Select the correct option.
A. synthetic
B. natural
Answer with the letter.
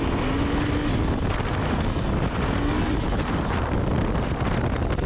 B